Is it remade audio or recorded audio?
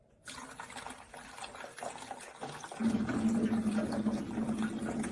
recorded